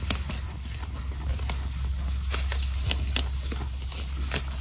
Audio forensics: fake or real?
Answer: real